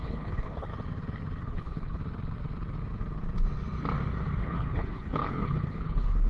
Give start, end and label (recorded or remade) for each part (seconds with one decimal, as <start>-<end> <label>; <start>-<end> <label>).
0.0-0.7 remade; 0.7-1.4 recorded; 1.4-2.0 remade; 2.0-4.4 recorded; 4.4-6.3 remade